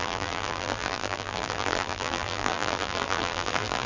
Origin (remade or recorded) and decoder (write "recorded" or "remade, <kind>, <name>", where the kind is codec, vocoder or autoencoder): remade, vocoder, BigVGAN v2